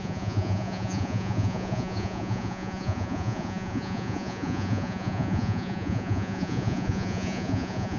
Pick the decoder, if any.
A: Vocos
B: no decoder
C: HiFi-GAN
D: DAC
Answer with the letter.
A